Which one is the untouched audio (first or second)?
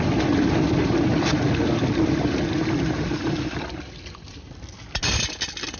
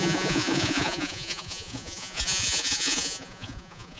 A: first